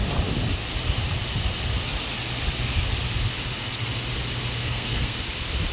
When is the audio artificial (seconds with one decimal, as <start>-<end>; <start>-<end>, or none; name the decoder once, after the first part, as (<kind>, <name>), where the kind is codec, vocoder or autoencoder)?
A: 4.6-5.2 (codec, SNAC)